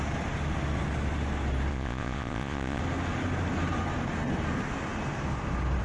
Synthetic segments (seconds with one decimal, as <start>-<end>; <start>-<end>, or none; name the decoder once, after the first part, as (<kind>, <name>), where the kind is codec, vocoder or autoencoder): 1.7-2.8 (vocoder, Vocos)